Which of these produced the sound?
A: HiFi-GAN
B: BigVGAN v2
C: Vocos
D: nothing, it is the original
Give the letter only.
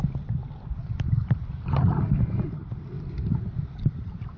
D